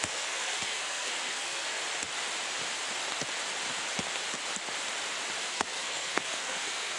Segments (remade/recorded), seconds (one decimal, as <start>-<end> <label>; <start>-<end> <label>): 0.0-1.8 remade; 1.8-5.4 recorded; 5.4-7.0 remade